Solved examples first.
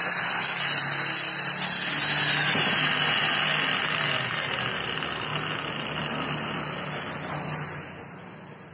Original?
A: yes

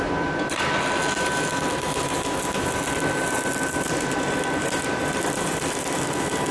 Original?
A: yes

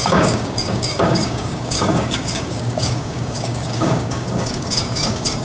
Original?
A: no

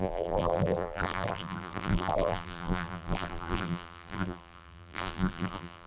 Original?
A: no